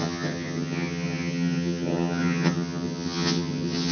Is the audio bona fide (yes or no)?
no